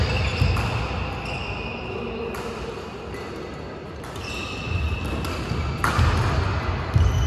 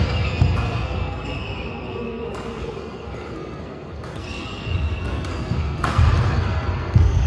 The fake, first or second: second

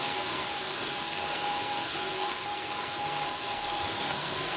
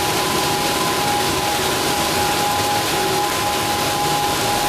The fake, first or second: first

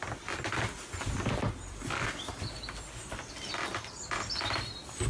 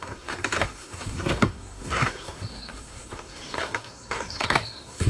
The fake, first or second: second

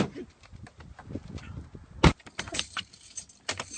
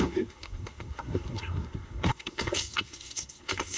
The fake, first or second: second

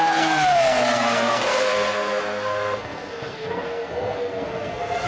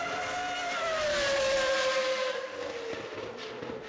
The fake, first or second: first